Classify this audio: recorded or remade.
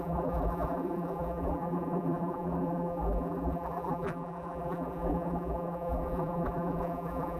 remade